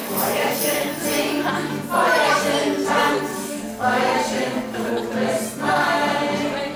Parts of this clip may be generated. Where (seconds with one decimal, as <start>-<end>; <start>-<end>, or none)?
0.0-0.9; 3.3-4.9